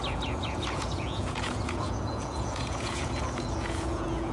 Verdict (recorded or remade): remade